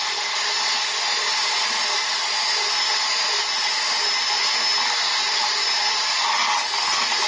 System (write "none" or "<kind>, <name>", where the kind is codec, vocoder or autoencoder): none